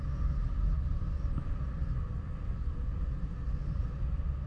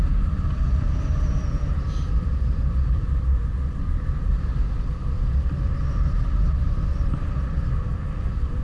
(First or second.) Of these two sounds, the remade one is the second